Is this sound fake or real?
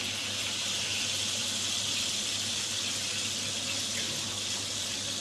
real